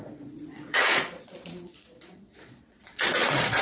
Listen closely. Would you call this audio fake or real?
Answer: fake